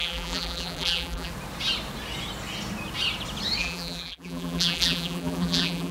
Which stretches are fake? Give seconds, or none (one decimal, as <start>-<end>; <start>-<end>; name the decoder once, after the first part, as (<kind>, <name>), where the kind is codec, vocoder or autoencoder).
0.0-1.3 (vocoder, BigVGAN v2); 3.6-5.9